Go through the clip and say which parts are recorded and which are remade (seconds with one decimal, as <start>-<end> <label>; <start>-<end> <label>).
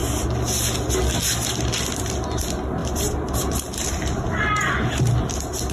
0.0-2.8 recorded; 2.8-4.5 remade; 4.5-5.7 recorded